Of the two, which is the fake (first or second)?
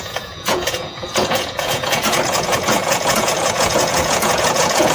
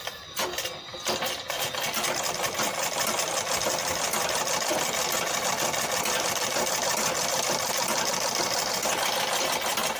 first